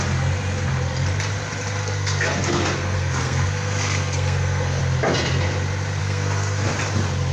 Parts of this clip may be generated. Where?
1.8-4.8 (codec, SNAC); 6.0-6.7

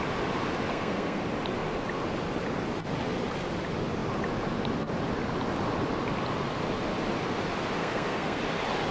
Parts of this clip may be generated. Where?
0.7-1.2 (codec, SNAC); 7.8-8.4